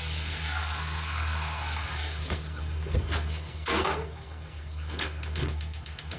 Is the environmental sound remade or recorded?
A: remade